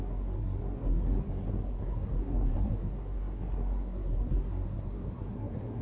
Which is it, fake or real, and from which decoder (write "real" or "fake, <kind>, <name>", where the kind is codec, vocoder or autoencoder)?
fake, codec, SNAC